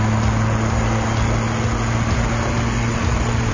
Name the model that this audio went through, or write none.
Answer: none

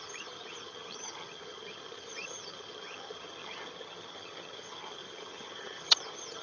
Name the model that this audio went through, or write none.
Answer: vocoder, HiFi-GAN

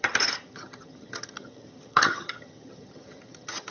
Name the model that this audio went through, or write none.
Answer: vocoder, HiFi-GAN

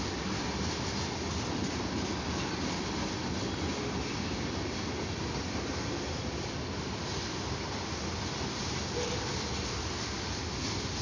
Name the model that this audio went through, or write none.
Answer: none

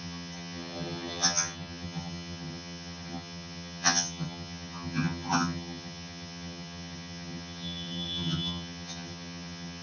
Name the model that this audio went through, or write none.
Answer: vocoder, HiFi-GAN